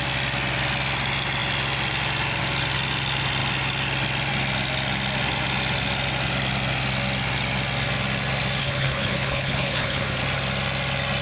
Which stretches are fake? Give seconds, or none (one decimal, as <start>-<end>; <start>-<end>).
8.6-10.2